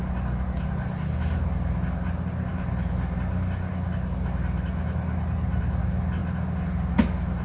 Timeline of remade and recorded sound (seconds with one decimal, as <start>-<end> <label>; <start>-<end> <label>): 0.0-7.4 recorded